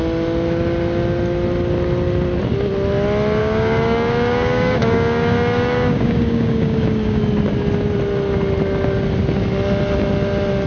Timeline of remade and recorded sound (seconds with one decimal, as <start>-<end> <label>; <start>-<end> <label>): 0.0-3.4 recorded; 3.4-7.2 remade; 7.2-10.7 recorded